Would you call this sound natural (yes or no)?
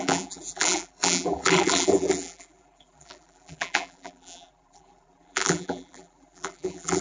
no